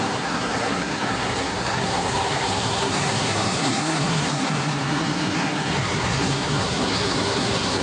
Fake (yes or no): yes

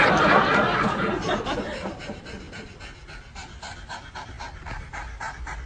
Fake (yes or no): no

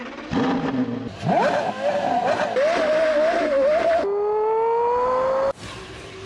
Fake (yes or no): no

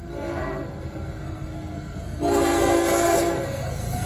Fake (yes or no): yes